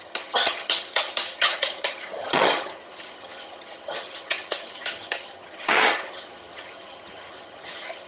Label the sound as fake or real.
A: fake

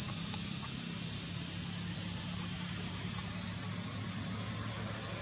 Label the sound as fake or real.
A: real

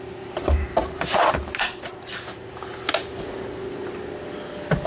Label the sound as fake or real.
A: real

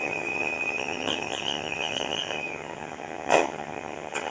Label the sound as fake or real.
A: fake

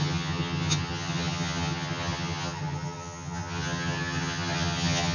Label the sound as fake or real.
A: fake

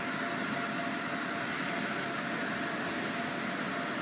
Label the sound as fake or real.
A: real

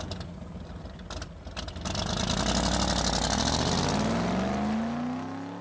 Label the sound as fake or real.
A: real